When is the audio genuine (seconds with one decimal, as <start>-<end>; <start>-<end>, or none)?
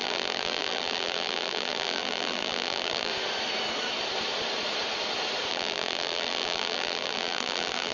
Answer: 3.1-5.5